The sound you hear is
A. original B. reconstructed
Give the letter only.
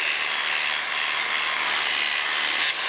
A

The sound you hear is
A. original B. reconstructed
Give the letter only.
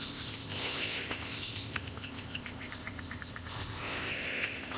B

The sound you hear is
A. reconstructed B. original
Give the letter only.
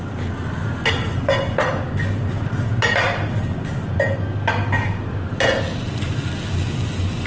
B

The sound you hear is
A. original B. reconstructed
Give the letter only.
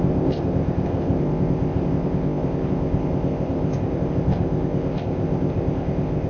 B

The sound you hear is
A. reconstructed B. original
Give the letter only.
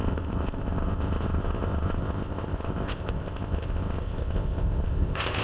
A